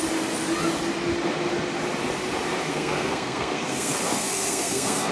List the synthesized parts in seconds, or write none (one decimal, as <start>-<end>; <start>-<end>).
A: 2.7-5.1